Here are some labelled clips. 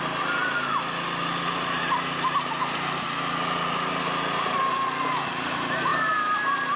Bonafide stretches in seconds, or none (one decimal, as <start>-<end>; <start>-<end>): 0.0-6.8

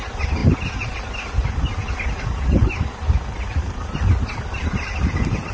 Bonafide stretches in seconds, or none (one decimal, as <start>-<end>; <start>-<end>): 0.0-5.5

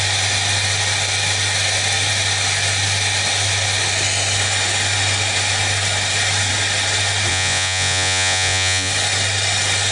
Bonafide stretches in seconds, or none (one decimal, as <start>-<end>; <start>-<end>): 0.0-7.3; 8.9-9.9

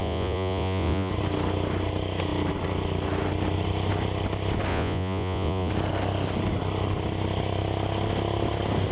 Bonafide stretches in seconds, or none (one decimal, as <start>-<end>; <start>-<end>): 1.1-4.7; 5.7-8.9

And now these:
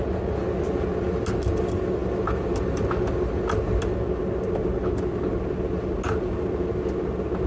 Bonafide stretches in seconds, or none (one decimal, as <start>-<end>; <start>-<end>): 0.0-7.5

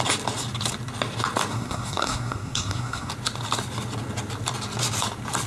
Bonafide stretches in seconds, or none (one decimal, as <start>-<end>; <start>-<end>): 0.0-1.5; 3.1-5.5